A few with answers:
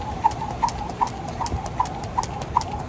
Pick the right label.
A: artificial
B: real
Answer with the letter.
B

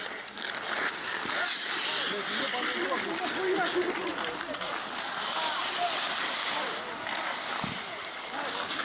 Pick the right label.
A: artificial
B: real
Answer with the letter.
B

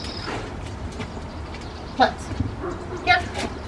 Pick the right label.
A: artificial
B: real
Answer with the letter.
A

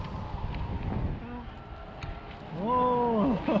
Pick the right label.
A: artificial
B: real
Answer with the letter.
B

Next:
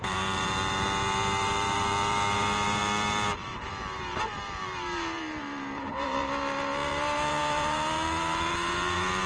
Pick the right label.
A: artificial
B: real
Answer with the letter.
A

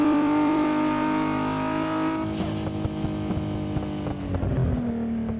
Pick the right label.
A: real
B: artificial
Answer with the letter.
B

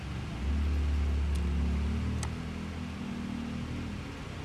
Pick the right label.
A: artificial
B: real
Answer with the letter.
B